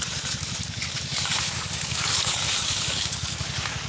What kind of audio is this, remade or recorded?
remade